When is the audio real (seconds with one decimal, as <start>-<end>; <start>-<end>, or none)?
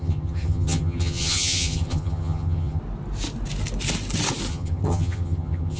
2.8-4.5